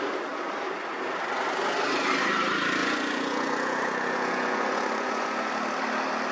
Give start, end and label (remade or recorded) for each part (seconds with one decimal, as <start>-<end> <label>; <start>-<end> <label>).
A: 0.0-2.8 recorded; 2.8-5.5 remade; 5.5-6.3 recorded